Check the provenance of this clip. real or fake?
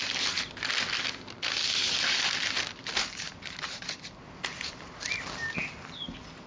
real